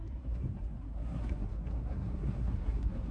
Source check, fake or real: fake